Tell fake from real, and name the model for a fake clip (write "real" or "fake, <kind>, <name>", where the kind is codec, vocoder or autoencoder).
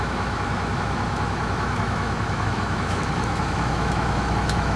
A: fake, autoencoder, DAC-VAE